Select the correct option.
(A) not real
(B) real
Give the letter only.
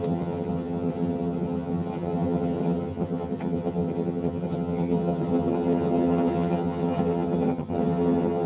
A